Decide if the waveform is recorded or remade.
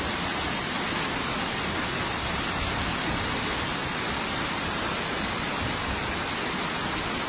recorded